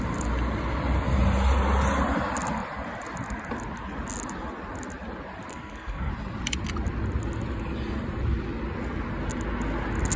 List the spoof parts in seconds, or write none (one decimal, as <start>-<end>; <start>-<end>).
5.5-6.1